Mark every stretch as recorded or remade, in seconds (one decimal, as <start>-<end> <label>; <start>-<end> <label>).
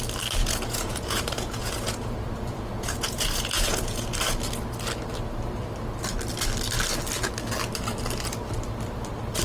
0.0-0.4 recorded; 0.4-4.1 remade; 4.1-9.4 recorded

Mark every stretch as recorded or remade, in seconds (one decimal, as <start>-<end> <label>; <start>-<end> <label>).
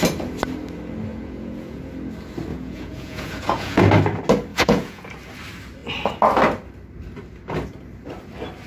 0.0-1.1 recorded; 1.1-1.8 remade; 1.8-2.5 recorded; 2.5-3.8 remade; 3.8-4.5 recorded; 4.5-5.1 remade; 5.1-8.7 recorded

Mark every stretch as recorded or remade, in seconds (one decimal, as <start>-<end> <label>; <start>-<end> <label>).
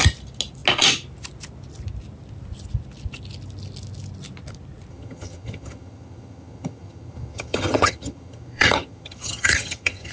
0.0-4.9 recorded; 4.9-10.1 remade